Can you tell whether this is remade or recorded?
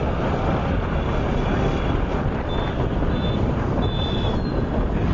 recorded